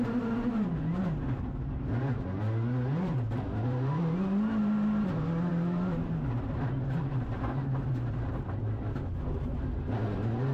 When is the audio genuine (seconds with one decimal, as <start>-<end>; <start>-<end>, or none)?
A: 0.0-10.5